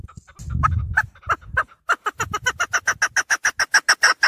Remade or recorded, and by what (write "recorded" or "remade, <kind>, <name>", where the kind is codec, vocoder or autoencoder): recorded